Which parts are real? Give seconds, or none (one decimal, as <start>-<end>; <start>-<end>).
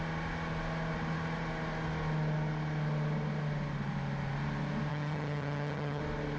0.0-4.9; 6.0-6.4